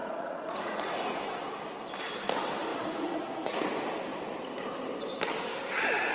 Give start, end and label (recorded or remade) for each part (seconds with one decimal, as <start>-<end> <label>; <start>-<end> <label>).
0.0-1.2 remade; 1.2-2.7 recorded; 2.7-3.6 remade; 3.6-6.1 recorded